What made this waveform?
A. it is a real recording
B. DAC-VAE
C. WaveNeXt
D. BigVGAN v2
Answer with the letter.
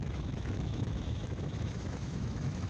B